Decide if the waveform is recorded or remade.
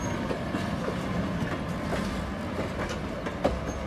recorded